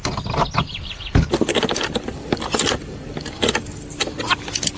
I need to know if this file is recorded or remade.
recorded